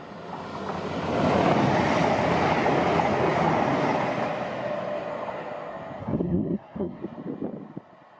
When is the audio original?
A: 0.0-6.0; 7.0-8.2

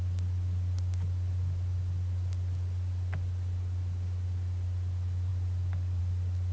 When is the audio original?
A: 0.0-6.5